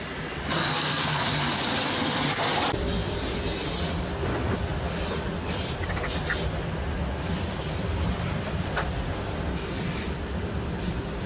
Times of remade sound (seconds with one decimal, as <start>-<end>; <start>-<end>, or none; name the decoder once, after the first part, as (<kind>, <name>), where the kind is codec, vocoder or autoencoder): 0.7-1.2 (codec, SNAC)